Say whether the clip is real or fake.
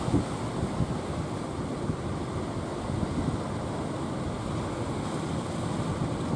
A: real